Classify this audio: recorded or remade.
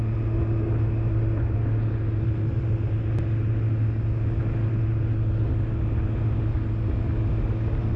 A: recorded